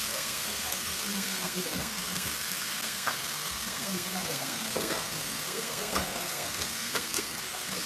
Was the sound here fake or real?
fake